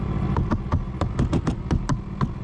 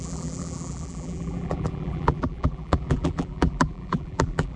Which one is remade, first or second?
second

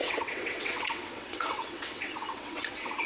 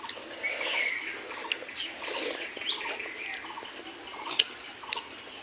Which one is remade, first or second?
first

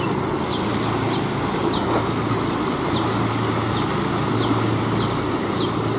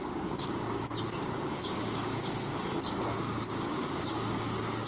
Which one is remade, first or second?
second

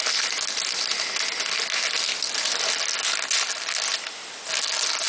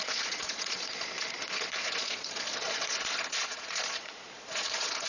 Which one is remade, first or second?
second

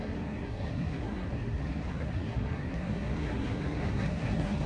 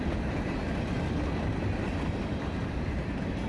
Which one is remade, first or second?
first